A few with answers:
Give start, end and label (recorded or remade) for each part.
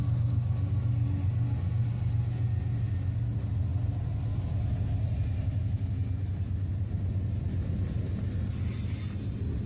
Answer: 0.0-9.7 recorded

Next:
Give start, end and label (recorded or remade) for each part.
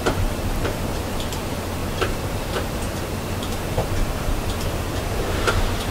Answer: 0.0-1.8 recorded; 1.8-3.3 remade; 3.3-3.8 recorded; 3.8-5.5 remade; 5.5-5.9 recorded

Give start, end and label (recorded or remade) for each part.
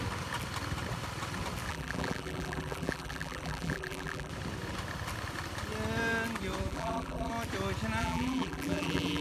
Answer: 0.0-1.7 recorded; 1.7-4.3 remade; 4.3-6.7 recorded; 6.7-7.3 remade; 7.3-8.0 recorded; 8.0-9.2 remade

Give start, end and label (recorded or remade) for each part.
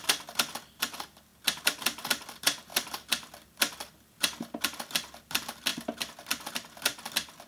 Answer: 0.0-1.3 remade; 1.3-1.8 recorded; 1.8-5.7 remade; 5.7-7.5 recorded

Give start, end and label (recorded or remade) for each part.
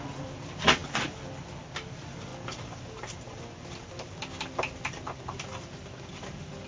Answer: 0.0-6.7 recorded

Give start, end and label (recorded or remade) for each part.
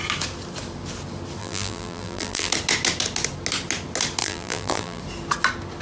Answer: 0.0-1.4 recorded; 1.4-2.5 remade; 2.5-4.2 recorded; 4.2-5.0 remade; 5.0-5.8 recorded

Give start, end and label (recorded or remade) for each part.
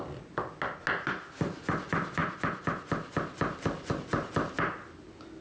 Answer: 0.0-5.4 recorded